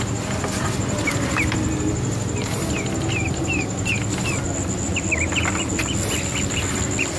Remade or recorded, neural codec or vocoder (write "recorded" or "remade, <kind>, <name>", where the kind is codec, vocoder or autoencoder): recorded